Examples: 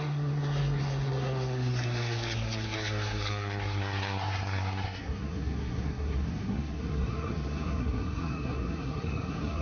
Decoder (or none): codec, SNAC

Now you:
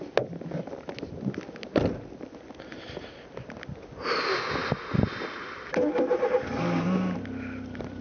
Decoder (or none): none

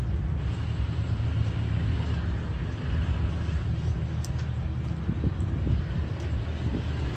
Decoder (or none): none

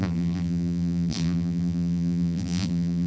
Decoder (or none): vocoder, BigVGAN v2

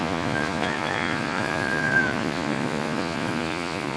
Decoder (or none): vocoder, Vocos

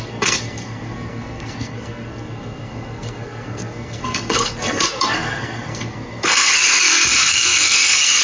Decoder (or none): codec, SNAC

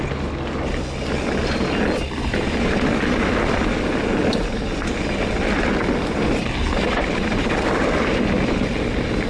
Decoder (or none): none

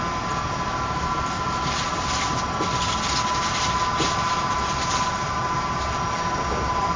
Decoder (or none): none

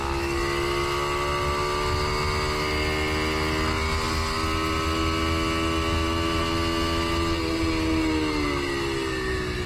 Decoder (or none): none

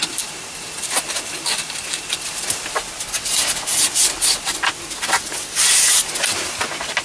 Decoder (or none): none